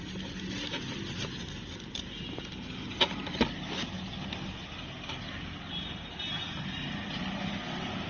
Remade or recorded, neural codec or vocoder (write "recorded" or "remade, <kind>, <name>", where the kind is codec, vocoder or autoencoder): recorded